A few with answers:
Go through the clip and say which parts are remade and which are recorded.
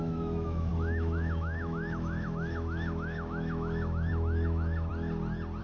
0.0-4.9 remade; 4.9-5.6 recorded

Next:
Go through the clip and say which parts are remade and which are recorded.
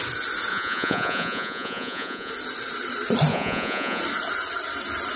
0.0-0.5 recorded; 0.5-2.3 remade; 2.3-3.3 recorded; 3.3-4.0 remade; 4.0-5.2 recorded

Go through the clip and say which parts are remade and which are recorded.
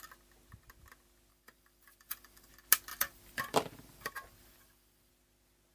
0.0-1.3 recorded; 1.3-2.5 remade; 2.5-2.9 recorded; 2.9-5.1 remade; 5.1-5.7 recorded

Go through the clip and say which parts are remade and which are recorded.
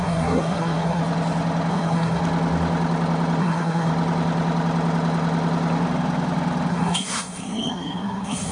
0.0-1.0 remade; 1.0-1.7 recorded; 1.7-2.2 remade; 2.2-3.4 recorded; 3.4-3.9 remade; 3.9-6.7 recorded; 6.7-8.5 remade